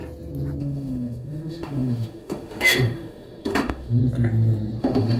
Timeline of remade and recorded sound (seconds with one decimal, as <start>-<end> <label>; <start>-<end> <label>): 0.0-0.6 recorded; 0.6-4.0 remade; 4.0-4.8 recorded; 4.8-5.2 remade